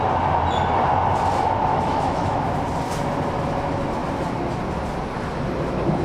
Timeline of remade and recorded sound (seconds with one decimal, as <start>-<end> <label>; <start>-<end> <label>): 0.0-1.7 recorded; 1.7-2.4 remade; 2.4-6.0 recorded

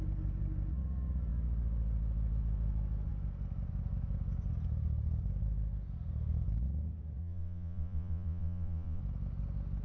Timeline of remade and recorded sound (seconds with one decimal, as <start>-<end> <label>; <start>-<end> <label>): 0.0-7.2 recorded; 7.2-9.0 remade; 9.0-9.8 recorded

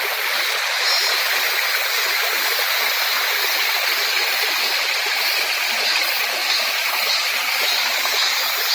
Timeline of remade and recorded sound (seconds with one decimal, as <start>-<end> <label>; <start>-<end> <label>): 0.0-6.4 recorded; 6.4-8.1 remade; 8.1-8.7 recorded

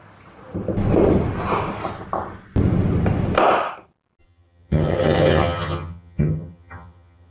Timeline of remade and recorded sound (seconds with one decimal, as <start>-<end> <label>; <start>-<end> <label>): 0.0-4.2 recorded; 4.2-7.3 remade

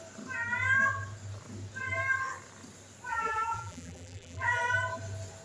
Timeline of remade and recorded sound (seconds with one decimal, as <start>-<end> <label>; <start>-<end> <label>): 0.0-3.1 recorded; 3.1-4.6 remade; 4.6-5.4 recorded

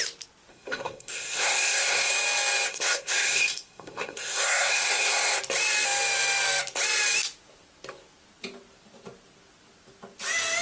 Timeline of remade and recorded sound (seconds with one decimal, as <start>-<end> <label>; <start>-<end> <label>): 0.0-0.5 recorded; 0.5-2.1 remade; 2.1-2.7 recorded; 2.7-5.4 remade; 5.4-10.6 recorded

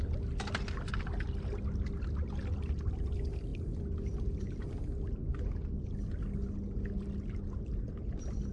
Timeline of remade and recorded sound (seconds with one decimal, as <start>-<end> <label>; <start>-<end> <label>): 0.0-8.5 recorded